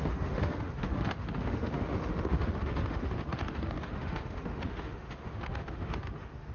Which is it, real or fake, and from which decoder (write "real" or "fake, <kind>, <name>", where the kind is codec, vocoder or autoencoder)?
fake, autoencoder, DAC-VAE